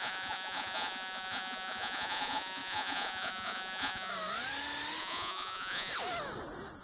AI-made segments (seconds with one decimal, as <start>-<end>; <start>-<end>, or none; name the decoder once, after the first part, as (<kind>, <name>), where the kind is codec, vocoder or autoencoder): 0.0-4.1 (vocoder, Vocos); 5.0-5.9